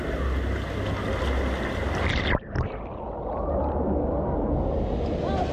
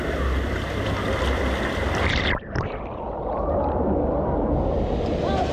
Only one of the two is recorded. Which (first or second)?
first